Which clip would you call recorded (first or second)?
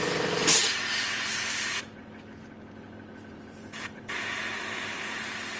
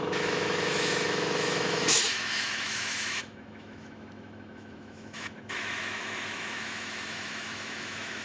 first